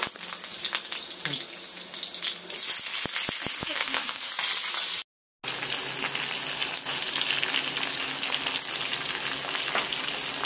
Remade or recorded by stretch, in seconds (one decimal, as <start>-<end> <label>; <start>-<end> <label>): 0.0-3.6 recorded; 3.6-4.3 remade; 4.3-10.5 recorded